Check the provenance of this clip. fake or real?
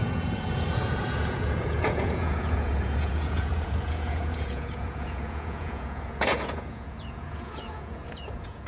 fake